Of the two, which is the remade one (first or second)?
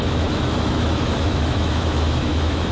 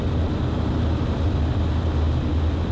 first